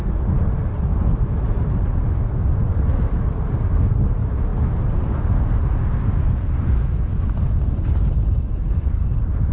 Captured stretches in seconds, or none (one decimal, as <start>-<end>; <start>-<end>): 0.0-9.5